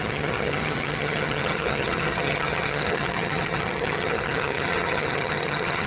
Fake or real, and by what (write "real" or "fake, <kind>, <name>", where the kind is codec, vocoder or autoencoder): fake, vocoder, HiFi-GAN